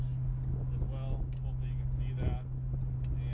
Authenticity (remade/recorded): recorded